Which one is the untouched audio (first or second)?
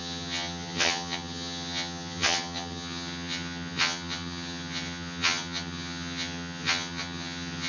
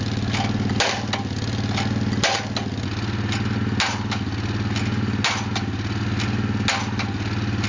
second